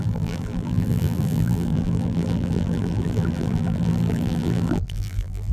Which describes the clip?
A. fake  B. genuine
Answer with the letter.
A